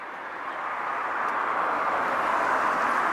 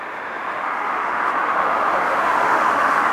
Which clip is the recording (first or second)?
first